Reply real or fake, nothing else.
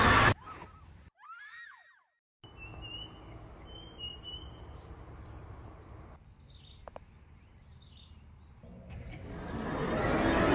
real